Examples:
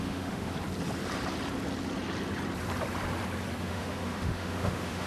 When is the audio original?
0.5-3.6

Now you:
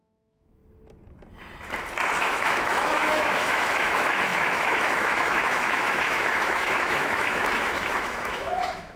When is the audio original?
0.6-2.2

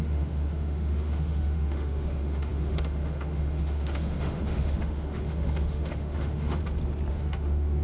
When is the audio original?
6.6-7.1

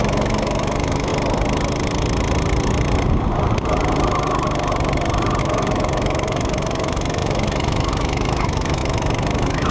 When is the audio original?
1.1-5.4

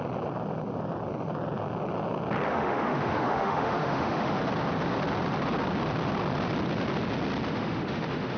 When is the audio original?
0.0-2.5; 4.4-7.5

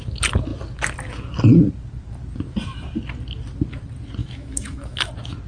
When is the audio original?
0.0-4.2; 5.1-5.5

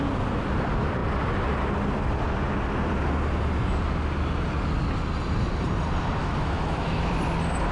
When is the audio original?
0.0-6.2; 6.9-7.7

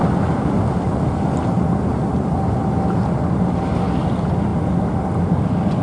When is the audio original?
0.0-5.8